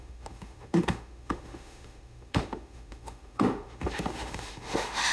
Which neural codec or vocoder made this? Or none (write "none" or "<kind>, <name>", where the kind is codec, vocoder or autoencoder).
autoencoder, DAC-VAE